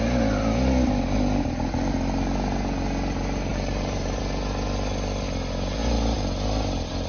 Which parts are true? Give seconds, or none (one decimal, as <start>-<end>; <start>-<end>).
0.0-3.5; 4.2-7.1